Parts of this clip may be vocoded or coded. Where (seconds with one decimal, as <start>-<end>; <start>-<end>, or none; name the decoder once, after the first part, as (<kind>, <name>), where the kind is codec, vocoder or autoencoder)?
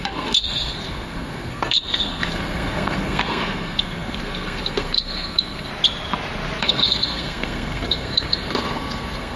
0.0-5.7 (codec, SNAC); 6.6-9.4